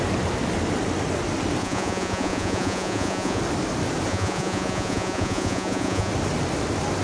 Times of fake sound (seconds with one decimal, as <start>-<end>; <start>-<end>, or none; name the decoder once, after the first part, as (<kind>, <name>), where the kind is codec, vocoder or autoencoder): 1.6-3.4 (vocoder, Vocos); 4.1-6.1